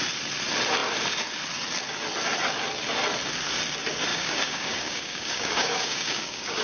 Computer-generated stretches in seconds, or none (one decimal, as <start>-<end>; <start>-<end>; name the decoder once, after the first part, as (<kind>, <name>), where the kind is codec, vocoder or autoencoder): 4.1-6.6 (codec, DAC)